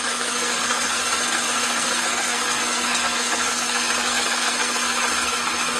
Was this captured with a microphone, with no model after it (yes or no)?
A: no